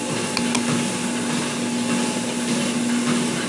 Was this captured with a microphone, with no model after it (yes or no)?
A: yes